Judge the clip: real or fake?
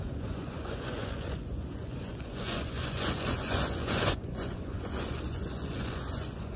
fake